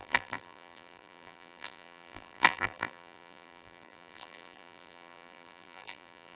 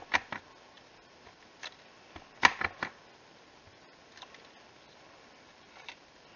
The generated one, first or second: first